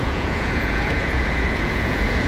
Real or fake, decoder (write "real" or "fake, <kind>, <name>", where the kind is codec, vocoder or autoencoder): fake, vocoder, Vocos